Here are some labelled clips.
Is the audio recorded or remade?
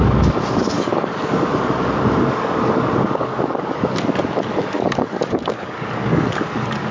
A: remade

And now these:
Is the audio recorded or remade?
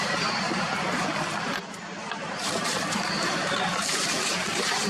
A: remade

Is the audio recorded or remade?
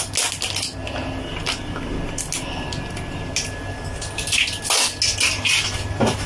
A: recorded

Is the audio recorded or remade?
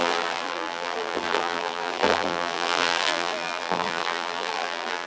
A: remade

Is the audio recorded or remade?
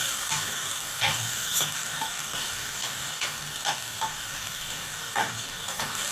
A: remade